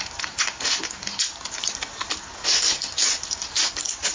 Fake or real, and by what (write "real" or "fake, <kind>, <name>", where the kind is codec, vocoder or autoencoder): real